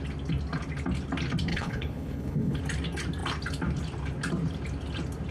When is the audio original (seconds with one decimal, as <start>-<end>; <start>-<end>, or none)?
0.0-1.5; 2.6-5.3